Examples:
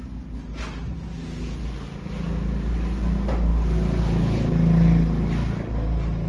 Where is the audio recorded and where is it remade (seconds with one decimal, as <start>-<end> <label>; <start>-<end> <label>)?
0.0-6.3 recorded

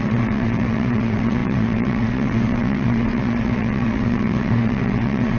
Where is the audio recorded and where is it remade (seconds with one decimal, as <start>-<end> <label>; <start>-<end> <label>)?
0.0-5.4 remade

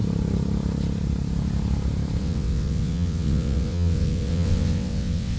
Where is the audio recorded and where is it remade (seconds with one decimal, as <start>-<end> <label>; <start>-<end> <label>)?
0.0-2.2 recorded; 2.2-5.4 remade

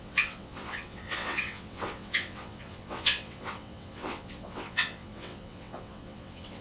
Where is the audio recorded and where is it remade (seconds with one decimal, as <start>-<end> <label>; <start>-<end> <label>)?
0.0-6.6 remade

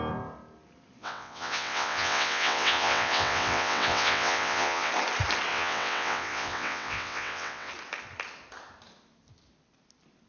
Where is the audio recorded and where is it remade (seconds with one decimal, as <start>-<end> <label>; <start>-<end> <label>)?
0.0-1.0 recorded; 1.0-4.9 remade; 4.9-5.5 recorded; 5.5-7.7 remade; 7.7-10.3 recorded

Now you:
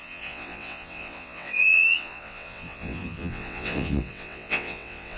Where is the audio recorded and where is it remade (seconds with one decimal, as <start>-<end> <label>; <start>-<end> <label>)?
0.0-5.2 remade

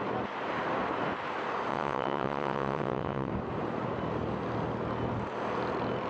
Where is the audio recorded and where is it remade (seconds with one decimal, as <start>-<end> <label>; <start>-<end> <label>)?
0.0-1.7 recorded; 1.7-3.3 remade; 3.3-6.1 recorded

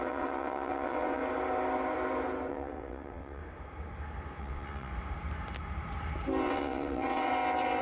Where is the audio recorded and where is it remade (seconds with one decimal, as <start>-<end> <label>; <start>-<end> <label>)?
0.0-1.2 remade; 1.2-2.5 recorded; 2.5-3.4 remade; 3.4-4.4 recorded; 4.4-4.9 remade; 4.9-6.4 recorded; 6.4-7.3 remade; 7.3-7.8 recorded